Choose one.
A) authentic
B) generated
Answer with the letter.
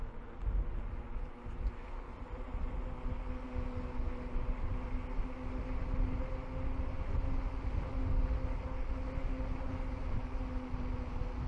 A